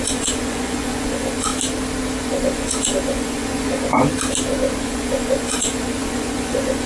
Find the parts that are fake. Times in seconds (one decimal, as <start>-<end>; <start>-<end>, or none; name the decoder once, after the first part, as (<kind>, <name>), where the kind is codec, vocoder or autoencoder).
0.0-1.5 (vocoder, Vocos); 2.2-4.1; 4.8-6.9